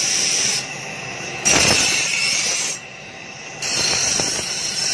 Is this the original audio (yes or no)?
no